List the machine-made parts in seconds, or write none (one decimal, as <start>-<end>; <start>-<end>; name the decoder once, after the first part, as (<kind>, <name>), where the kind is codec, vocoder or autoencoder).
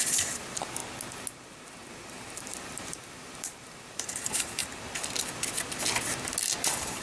0.0-0.8 (vocoder, BigVGAN v2); 1.9-4.6; 6.6-7.0